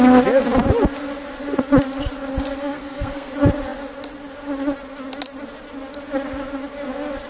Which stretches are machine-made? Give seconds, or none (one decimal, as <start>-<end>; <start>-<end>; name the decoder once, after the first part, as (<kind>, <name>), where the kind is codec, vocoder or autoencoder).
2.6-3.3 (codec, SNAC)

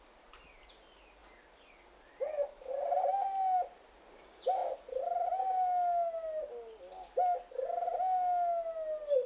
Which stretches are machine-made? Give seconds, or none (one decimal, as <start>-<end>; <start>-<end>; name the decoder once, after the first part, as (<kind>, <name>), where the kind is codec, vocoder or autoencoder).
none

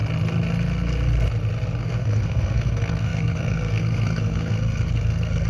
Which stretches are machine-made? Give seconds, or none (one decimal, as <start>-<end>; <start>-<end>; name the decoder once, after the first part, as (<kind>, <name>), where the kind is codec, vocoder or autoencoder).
1.8-5.5 (codec, SNAC)

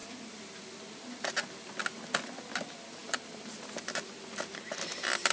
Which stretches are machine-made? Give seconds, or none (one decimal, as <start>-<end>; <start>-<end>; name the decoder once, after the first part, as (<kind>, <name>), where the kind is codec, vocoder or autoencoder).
none

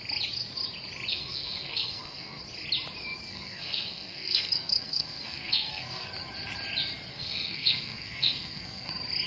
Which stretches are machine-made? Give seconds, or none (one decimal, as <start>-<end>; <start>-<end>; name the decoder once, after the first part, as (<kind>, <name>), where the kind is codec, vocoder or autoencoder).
1.1-2.4 (codec, SNAC); 3.3-6.1; 7.1-8.9

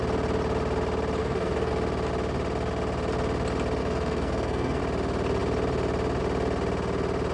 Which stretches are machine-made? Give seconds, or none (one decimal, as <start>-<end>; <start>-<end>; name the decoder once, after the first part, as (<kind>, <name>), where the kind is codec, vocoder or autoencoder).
1.2-1.7 (codec, SNAC); 3.8-4.8

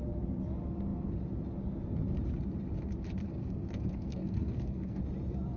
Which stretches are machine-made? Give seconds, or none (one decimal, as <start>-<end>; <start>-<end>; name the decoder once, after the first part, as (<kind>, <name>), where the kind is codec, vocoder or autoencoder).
3.2-5.0 (codec, SNAC)